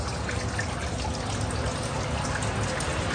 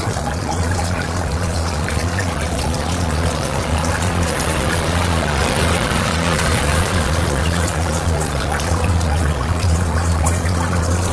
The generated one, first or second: second